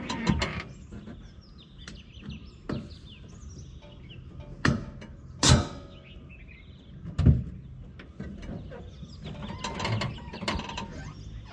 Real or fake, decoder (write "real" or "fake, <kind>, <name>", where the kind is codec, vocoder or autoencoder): real